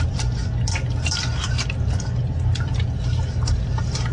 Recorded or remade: recorded